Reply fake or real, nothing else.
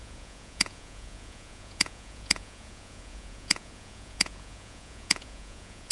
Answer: fake